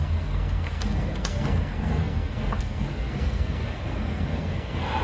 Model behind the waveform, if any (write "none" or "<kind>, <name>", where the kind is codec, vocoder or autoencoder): codec, SNAC